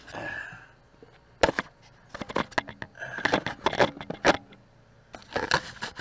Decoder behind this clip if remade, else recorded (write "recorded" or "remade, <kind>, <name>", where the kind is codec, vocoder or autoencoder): recorded